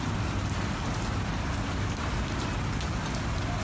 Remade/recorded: recorded